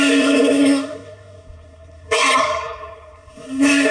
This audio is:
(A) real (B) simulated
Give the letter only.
B